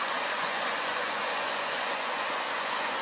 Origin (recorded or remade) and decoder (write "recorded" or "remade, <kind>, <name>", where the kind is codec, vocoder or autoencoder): remade, vocoder, Vocos